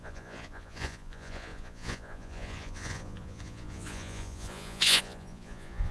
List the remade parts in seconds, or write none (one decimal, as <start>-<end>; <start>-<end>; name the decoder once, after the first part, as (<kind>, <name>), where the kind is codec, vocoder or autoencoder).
0.0-5.9 (vocoder, Vocos)